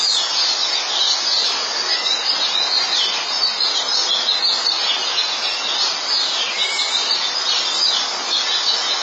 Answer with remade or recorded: recorded